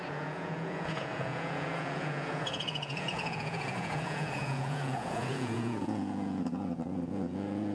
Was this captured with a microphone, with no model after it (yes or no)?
no